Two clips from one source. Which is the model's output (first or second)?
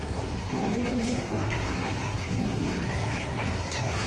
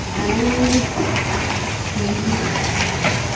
first